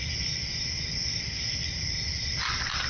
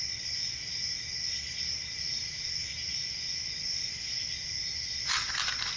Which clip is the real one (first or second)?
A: second